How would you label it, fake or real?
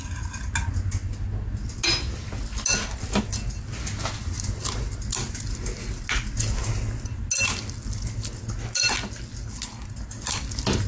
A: real